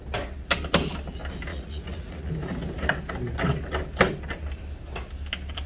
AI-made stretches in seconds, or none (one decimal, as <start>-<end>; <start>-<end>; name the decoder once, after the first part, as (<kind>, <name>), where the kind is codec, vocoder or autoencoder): 1.5-2.3 (vocoder, Vocos)